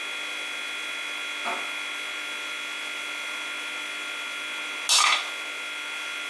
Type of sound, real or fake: real